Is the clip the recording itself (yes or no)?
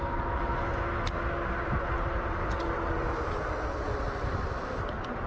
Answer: yes